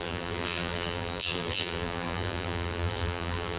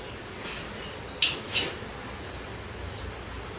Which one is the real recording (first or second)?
second